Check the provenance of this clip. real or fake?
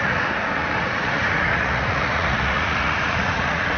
fake